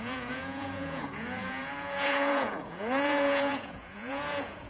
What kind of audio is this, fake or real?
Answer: fake